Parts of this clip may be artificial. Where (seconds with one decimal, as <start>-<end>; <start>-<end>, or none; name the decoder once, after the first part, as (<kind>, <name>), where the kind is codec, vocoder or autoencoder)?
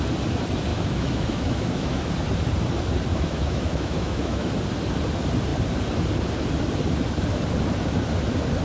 0.7-2.1 (autoencoder, DAC-VAE); 3.1-4.6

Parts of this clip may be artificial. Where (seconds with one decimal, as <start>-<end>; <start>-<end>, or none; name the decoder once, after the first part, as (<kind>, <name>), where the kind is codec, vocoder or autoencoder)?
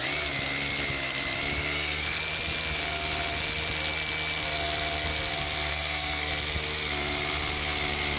1.6-2.2 (codec, SNAC); 5.7-6.3